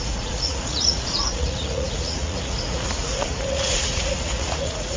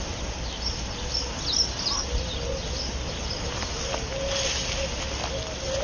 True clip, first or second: second